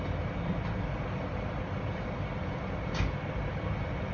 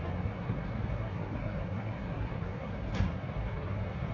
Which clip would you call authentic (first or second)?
first